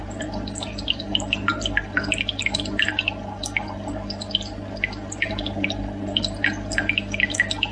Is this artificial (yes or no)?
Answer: no